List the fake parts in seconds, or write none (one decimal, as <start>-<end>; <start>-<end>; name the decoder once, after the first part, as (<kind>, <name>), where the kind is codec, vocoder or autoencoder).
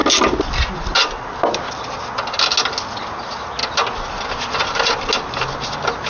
none